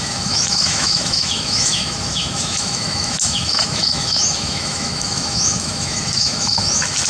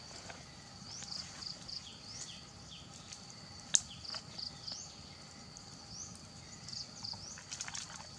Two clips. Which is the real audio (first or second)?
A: second